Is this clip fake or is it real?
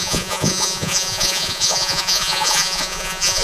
fake